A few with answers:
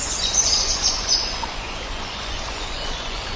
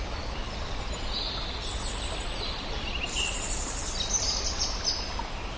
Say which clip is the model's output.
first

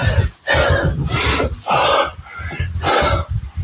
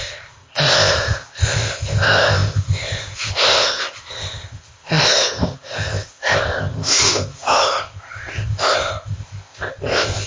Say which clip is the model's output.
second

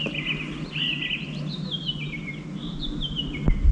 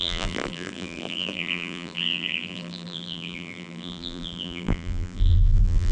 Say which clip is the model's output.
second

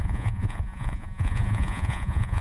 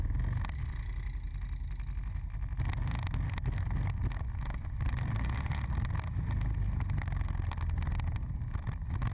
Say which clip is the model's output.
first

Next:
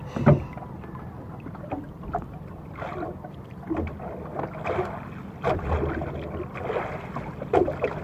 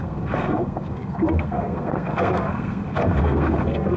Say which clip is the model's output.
second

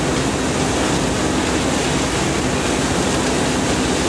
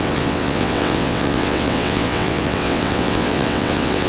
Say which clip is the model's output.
second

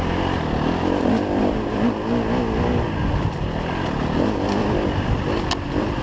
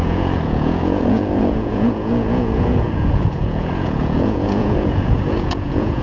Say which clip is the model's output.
second